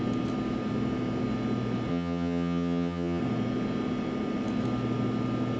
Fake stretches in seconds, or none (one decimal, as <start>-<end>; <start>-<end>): 1.9-3.2